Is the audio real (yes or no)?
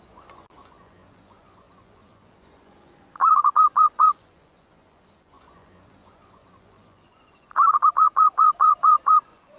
no